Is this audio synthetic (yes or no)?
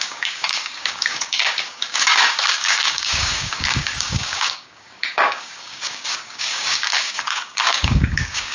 yes